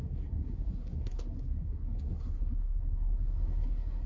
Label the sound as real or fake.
fake